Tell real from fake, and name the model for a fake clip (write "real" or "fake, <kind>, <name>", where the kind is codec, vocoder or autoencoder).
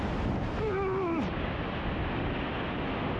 real